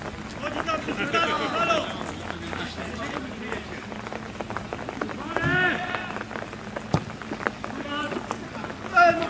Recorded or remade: recorded